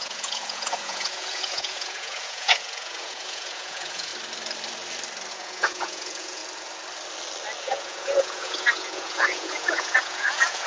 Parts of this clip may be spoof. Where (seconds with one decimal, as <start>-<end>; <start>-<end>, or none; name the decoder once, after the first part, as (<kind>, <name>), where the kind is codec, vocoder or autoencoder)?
0.0-4.1 (vocoder, Vocos); 5.3-6.4; 7.6-10.7